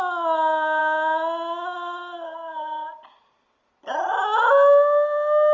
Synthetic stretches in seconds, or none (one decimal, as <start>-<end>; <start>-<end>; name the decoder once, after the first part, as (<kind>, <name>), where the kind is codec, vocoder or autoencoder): none